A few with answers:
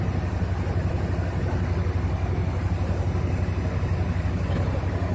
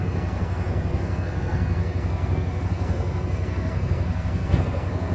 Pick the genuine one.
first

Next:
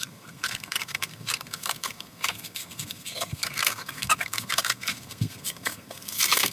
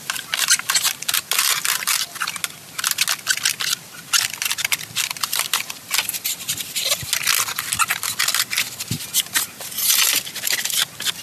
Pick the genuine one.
second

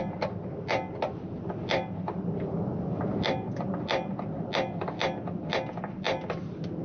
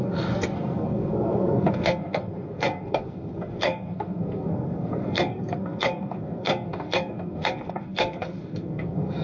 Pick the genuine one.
first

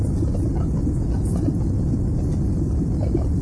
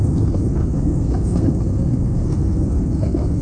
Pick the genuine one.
first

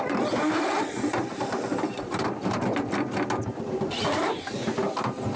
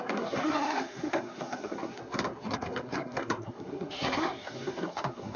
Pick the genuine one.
first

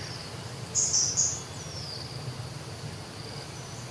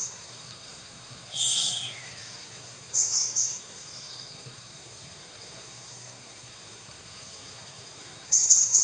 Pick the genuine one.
first